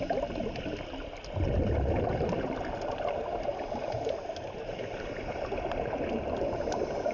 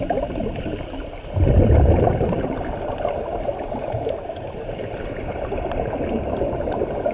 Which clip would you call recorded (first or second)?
first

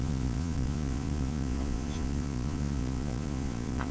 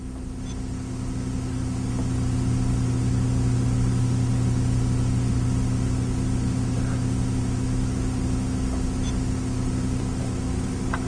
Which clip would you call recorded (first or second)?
second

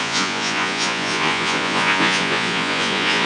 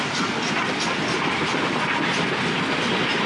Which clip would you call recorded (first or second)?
second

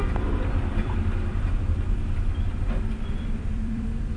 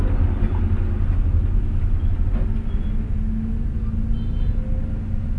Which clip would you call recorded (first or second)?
second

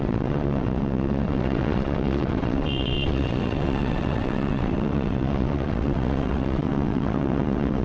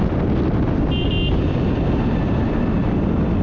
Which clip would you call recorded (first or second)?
second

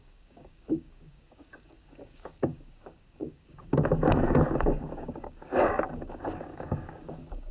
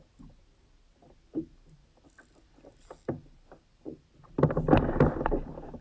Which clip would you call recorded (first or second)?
second